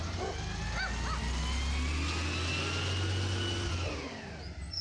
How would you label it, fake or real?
real